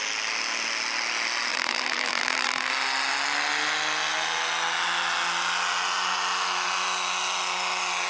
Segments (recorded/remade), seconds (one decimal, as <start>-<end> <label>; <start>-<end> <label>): 0.0-1.5 recorded; 1.5-2.7 remade; 2.7-8.1 recorded

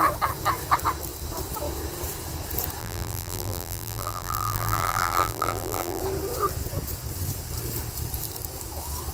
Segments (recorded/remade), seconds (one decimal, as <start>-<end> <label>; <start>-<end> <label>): 0.0-2.8 recorded; 2.8-6.0 remade; 6.0-9.1 recorded

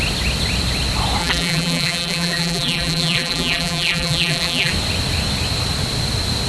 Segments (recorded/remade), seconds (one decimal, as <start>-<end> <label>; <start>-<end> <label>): 0.0-1.2 recorded; 1.2-4.7 remade; 4.7-6.5 recorded

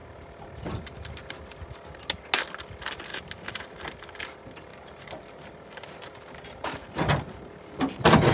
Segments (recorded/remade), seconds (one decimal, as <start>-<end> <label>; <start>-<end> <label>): 0.0-1.3 remade; 1.3-3.1 recorded; 3.1-4.2 remade; 4.2-4.7 recorded; 4.7-6.9 remade; 6.9-8.3 recorded

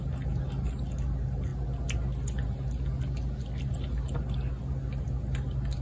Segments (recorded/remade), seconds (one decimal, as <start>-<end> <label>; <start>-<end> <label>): 0.0-5.8 recorded

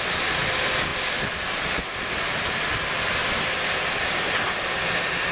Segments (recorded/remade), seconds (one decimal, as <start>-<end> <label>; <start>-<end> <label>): 0.0-0.9 recorded; 0.9-4.1 remade; 4.1-5.3 recorded

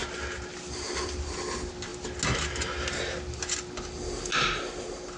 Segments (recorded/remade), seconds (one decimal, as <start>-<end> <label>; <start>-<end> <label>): 0.0-5.2 recorded

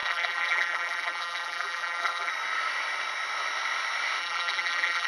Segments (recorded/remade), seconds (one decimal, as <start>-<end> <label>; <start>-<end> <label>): 0.0-2.3 remade; 2.3-4.2 recorded; 4.2-5.1 remade